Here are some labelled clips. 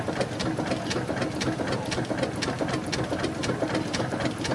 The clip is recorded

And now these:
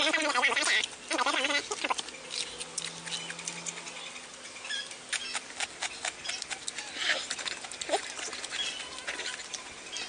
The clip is recorded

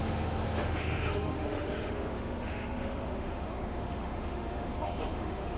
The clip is remade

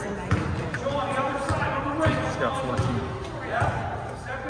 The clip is recorded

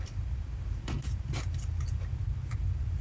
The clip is remade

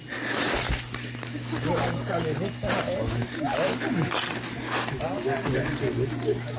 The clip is recorded